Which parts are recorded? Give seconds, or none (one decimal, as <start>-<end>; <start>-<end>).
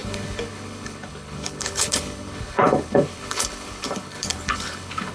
none